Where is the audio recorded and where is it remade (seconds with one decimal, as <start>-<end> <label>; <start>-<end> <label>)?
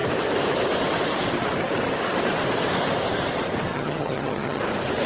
0.0-3.7 recorded; 3.7-4.6 remade; 4.6-5.1 recorded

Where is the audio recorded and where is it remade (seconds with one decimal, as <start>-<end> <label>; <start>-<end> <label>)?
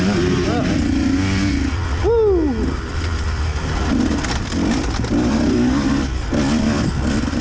0.0-7.4 recorded